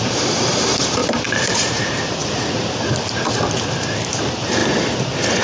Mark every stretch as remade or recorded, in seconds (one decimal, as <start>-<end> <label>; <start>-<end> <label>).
0.0-2.2 remade; 2.2-2.9 recorded; 2.9-4.6 remade; 4.6-5.4 recorded